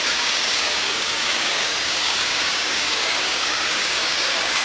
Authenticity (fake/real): fake